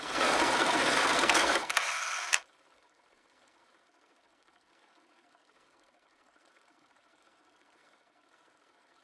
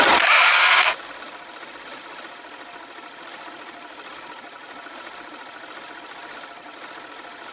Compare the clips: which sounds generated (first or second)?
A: first